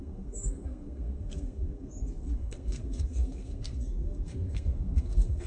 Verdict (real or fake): fake